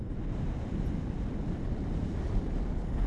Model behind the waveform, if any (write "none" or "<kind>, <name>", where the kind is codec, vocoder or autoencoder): none